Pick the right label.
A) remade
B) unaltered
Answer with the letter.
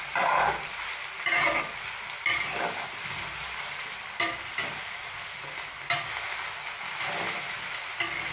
B